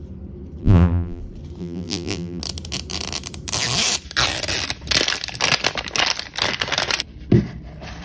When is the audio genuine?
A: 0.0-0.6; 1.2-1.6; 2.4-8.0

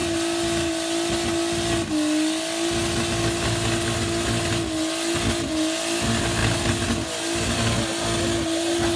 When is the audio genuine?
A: 0.0-9.0